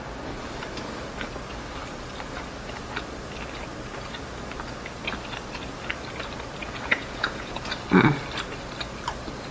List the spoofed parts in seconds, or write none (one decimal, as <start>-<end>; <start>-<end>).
6.6-7.6